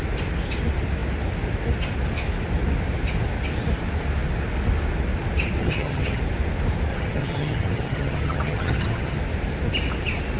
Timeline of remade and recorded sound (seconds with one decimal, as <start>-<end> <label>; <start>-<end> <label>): 0.0-5.6 recorded; 5.6-6.2 remade; 6.2-6.9 recorded; 6.9-9.2 remade; 9.2-10.4 recorded